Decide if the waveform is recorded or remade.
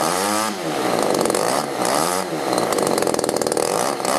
remade